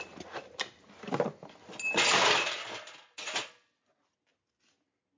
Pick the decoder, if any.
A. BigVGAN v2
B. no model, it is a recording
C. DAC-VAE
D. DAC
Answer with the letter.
B